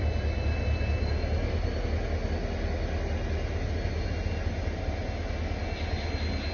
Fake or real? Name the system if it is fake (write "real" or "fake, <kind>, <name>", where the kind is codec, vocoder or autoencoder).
real